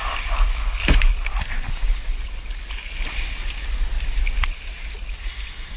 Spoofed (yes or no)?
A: no